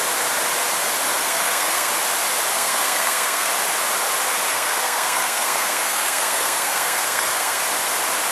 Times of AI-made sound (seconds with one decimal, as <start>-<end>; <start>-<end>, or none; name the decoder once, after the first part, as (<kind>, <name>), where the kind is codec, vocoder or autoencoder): 1.2-1.9 (codec, SNAC); 2.5-3.5; 4.5-7.6